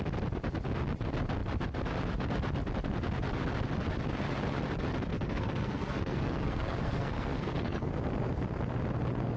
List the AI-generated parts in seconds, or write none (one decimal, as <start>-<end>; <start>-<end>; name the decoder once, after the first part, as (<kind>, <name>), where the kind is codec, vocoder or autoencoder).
5.1-7.9 (codec, SNAC)